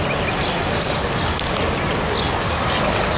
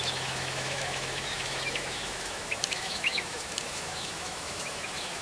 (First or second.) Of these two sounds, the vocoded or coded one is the second